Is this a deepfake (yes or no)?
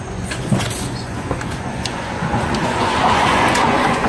yes